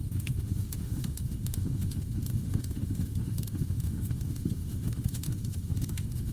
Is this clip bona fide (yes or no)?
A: no